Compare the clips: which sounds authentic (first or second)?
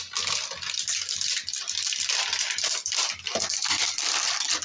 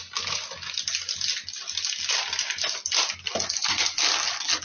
second